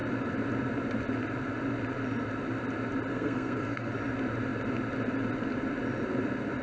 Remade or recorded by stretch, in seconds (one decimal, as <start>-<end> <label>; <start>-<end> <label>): 0.0-3.1 recorded; 3.1-3.9 remade; 3.9-6.6 recorded